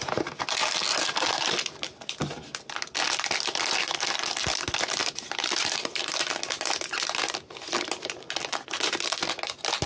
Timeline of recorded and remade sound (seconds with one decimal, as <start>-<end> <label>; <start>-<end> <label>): 0.0-9.9 recorded